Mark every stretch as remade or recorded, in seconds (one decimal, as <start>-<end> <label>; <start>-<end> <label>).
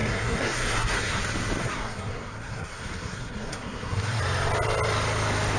0.0-1.2 remade; 1.2-1.6 recorded; 1.6-4.2 remade; 4.2-5.6 recorded